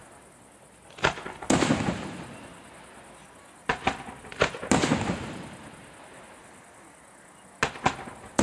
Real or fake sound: real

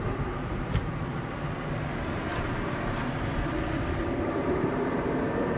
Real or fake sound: fake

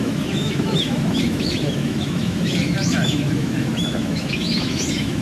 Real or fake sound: fake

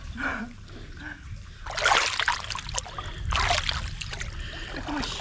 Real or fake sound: real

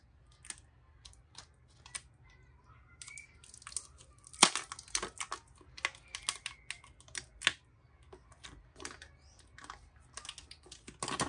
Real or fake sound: real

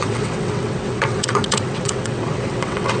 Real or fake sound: fake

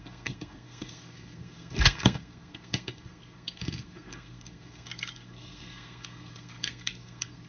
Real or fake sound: fake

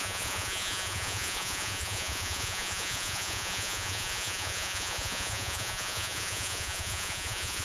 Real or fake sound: fake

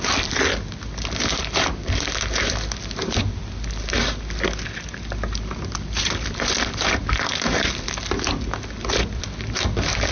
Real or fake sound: real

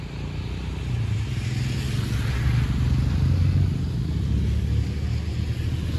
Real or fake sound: real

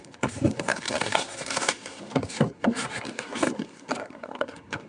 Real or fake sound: fake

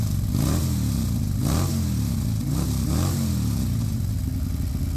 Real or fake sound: real